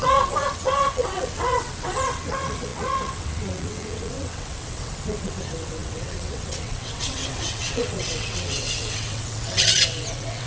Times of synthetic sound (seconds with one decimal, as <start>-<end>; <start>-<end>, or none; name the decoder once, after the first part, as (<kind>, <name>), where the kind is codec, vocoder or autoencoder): 0.0-10.5 (vocoder, WaveNeXt)